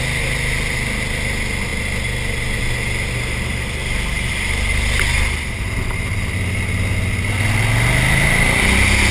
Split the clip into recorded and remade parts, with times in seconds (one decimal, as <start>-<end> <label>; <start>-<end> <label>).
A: 0.0-9.1 recorded